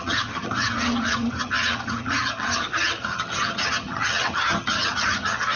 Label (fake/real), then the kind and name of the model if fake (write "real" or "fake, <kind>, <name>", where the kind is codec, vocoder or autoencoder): fake, vocoder, HiFi-GAN